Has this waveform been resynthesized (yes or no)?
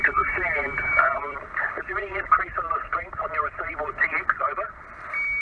yes